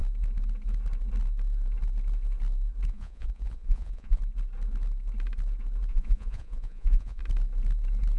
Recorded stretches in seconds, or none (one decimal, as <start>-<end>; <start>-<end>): 0.0-2.9; 4.2-5.9; 7.2-8.2